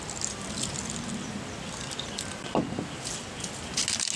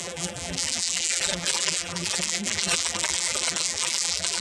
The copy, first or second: second